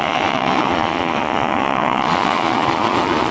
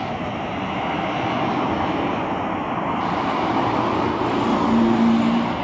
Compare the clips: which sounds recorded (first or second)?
second